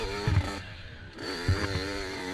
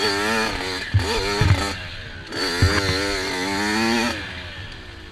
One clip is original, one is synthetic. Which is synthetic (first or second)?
first